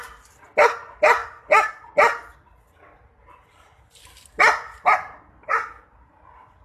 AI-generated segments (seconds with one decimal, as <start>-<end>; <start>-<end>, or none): none